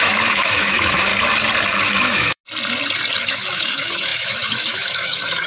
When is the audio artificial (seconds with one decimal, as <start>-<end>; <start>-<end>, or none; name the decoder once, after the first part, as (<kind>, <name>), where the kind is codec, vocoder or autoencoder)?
0.0-1.1 (autoencoder, DAC-VAE); 2.0-2.4; 3.2-5.5